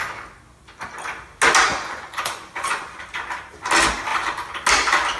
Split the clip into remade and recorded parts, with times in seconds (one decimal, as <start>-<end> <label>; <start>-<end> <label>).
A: 0.0-1.7 recorded; 1.7-3.0 remade; 3.0-5.2 recorded